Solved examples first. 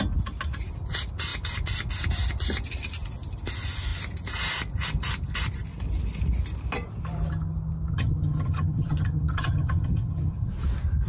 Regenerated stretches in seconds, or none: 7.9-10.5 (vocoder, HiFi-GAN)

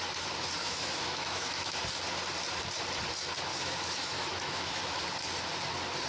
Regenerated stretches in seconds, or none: 0.6-1.8 (autoencoder, DAC-VAE); 3.5-5.0

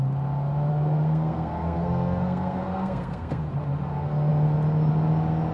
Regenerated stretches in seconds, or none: 0.7-3.5 (codec, SNAC)